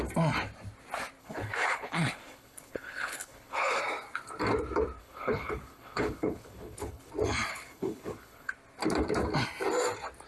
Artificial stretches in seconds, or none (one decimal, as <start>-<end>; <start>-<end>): 1.2-3.8; 5.0-7.1; 7.5-8.5